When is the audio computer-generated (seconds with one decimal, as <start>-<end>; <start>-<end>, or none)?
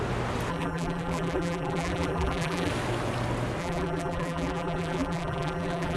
0.5-2.7; 3.6-6.0